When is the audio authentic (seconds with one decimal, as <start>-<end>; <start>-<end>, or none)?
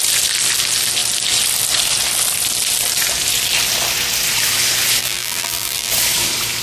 0.0-5.0; 5.9-6.6